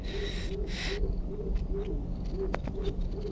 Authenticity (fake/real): real